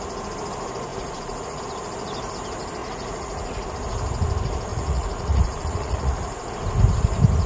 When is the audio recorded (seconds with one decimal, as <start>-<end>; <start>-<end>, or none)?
0.0-0.9; 1.6-2.8; 3.7-4.7; 6.5-7.5